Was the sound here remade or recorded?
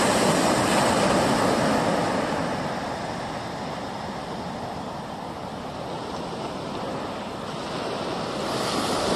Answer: recorded